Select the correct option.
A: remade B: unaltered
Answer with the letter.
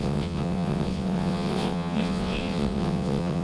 A